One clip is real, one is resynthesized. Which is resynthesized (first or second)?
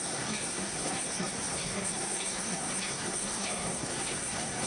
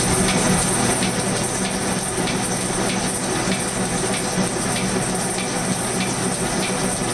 first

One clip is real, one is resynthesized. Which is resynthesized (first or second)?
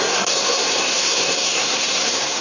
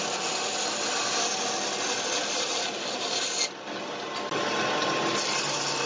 first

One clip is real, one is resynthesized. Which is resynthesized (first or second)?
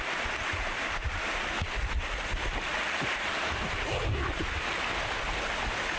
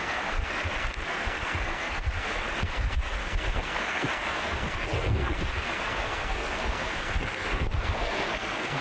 second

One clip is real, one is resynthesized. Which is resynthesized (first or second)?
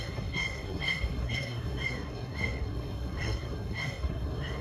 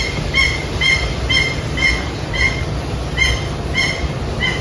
first